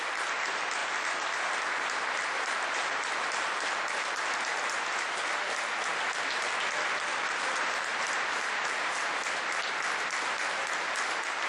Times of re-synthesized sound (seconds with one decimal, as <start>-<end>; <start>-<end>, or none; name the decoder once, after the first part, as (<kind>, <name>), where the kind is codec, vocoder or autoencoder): none